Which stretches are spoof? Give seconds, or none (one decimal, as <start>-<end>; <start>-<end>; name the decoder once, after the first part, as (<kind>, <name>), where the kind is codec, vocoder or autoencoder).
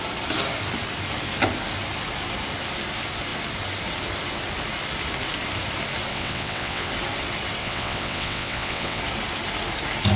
6.1-6.9 (vocoder, WaveNeXt); 7.6-9.0